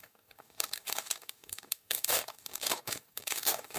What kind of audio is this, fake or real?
fake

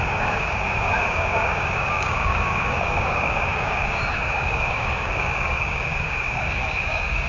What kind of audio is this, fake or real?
fake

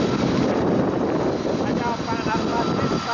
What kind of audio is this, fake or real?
real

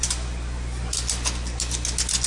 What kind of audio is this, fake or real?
real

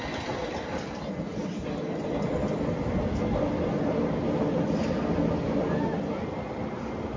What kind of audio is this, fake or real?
real